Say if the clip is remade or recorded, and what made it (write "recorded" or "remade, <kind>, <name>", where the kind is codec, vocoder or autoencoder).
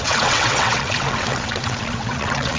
remade, vocoder, WaveNeXt